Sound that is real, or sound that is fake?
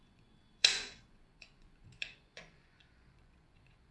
fake